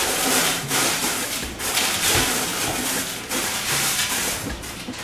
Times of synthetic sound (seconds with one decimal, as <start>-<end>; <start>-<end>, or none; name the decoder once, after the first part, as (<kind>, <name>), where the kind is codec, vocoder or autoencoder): 0.0-2.5 (vocoder, BigVGAN v2); 3.3-5.0